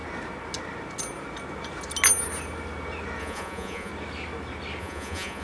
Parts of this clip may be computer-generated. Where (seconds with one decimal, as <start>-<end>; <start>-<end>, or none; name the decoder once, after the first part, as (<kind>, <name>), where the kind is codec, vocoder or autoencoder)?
3.2-3.9 (vocoder, Vocos); 4.8-5.4